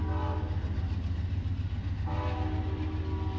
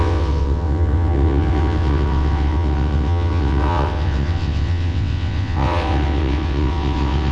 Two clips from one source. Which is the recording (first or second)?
first